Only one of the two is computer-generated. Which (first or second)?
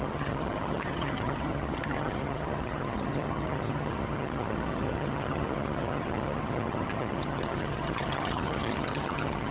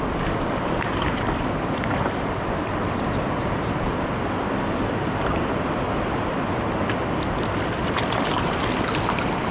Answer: first